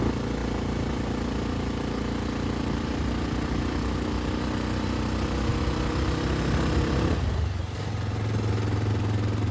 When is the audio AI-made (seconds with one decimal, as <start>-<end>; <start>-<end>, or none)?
none